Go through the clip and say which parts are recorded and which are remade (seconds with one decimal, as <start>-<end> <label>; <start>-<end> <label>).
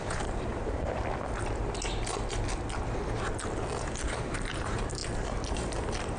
0.0-1.0 remade; 1.0-3.9 recorded; 3.9-5.0 remade; 5.0-5.5 recorded; 5.5-6.2 remade